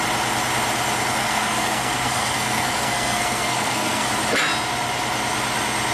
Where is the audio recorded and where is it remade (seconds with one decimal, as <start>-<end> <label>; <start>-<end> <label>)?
0.0-1.2 recorded; 1.2-4.1 remade; 4.1-5.9 recorded